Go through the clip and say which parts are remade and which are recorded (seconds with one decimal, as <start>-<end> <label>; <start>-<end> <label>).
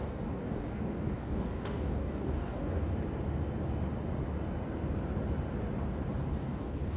0.0-2.9 remade; 2.9-6.3 recorded; 6.3-7.0 remade